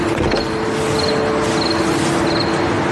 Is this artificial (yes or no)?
no